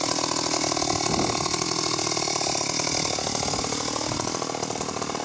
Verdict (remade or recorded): recorded